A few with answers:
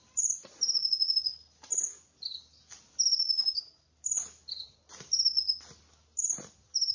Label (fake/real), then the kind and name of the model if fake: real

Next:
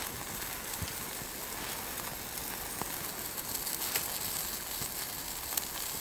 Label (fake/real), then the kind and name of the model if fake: real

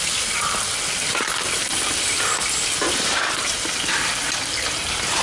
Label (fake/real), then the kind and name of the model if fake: real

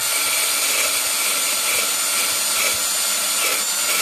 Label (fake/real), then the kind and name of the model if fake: real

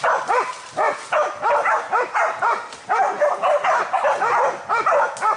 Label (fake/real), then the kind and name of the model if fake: real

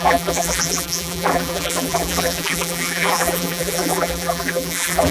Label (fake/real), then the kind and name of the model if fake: fake, vocoder, BigVGAN v2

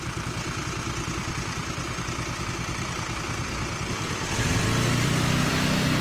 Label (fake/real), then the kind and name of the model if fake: fake, vocoder, BigVGAN v2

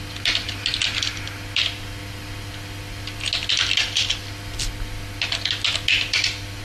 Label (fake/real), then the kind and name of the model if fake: real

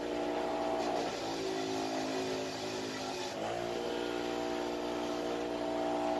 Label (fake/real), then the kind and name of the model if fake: real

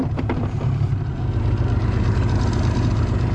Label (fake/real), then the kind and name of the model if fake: fake, vocoder, BigVGAN v2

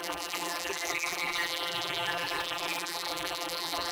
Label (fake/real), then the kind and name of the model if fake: fake, vocoder, BigVGAN v2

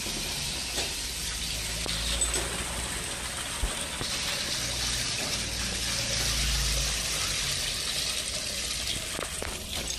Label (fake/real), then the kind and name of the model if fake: real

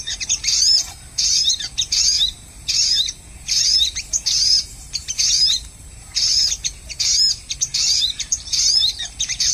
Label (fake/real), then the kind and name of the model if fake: fake, vocoder, BigVGAN v2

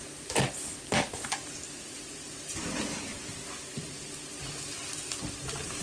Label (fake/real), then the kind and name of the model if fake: fake, vocoder, BigVGAN v2